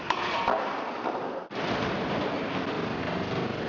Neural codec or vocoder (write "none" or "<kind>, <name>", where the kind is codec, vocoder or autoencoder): none